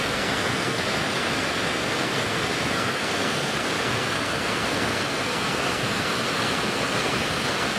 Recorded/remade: remade